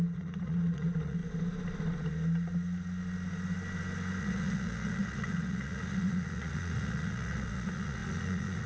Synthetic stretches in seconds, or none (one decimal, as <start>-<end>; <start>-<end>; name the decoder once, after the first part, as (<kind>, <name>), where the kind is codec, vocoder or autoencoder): 0.0-1.2 (vocoder, Vocos); 4.2-8.7